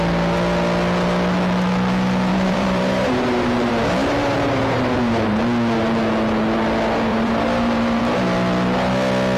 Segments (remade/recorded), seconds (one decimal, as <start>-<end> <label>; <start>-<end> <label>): 0.0-2.3 recorded; 2.3-3.7 remade; 3.7-4.2 recorded; 4.2-5.4 remade; 5.4-7.1 recorded; 7.1-8.0 remade; 8.0-9.4 recorded